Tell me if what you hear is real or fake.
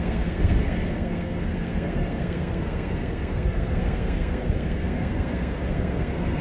fake